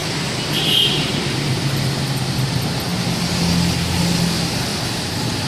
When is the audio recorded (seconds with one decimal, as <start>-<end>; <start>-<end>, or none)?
2.0-4.7